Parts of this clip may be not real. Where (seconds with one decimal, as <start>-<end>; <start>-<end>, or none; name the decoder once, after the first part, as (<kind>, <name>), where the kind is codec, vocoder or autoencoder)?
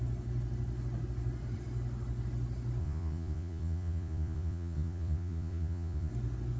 2.8-6.1 (vocoder, Vocos)